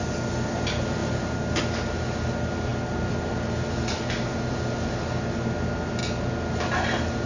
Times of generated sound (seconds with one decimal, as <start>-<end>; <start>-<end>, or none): none